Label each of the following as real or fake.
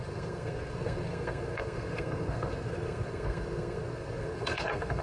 fake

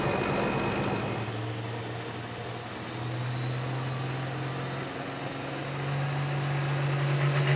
real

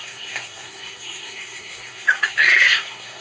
fake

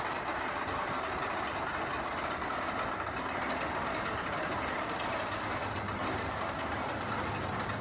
real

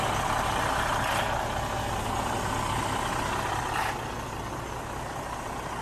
real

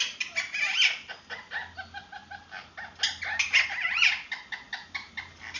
real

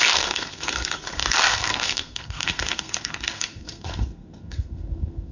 fake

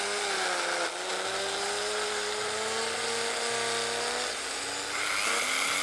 real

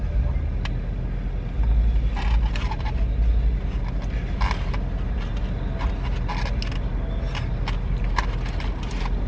real